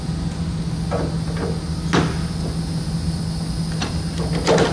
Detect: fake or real real